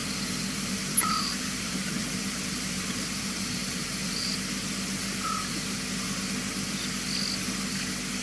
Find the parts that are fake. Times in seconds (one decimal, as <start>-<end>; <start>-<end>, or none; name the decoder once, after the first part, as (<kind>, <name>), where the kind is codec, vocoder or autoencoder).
0.0-4.3 (vocoder, BigVGAN v2)